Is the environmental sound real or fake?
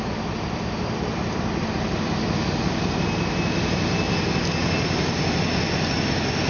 real